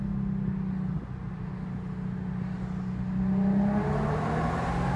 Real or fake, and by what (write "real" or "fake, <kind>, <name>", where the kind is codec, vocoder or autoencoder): real